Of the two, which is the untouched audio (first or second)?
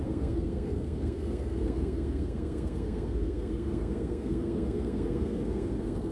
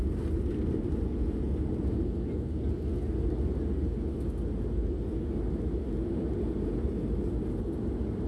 second